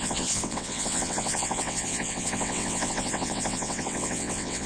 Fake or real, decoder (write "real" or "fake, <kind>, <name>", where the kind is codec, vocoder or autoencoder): fake, vocoder, WaveNeXt